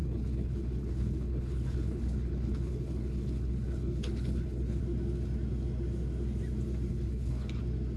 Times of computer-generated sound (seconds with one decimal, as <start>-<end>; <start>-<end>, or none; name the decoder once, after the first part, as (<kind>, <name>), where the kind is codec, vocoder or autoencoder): 0.0-4.8 (codec, HILCodec); 6.9-7.6